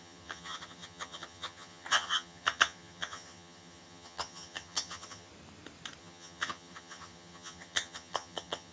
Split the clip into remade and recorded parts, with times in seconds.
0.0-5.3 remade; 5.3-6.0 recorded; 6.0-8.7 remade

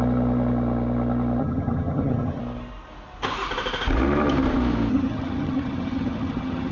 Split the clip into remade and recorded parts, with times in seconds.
0.0-1.4 recorded; 1.4-2.4 remade; 2.4-4.9 recorded; 4.9-6.7 remade

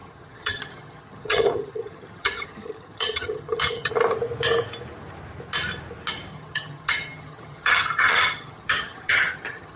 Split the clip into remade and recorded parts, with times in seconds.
0.0-3.9 remade; 3.9-6.3 recorded; 6.3-9.8 remade

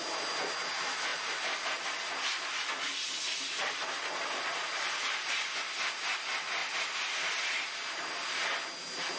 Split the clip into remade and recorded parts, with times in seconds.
0.0-9.2 recorded

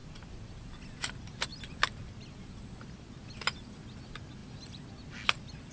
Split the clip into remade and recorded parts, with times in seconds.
0.0-5.7 recorded

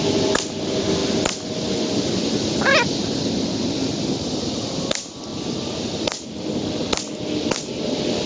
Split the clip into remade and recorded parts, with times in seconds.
0.0-8.3 recorded

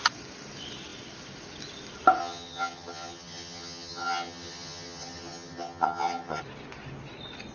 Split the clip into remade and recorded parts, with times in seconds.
0.0-2.2 recorded; 2.2-6.4 remade; 6.4-7.5 recorded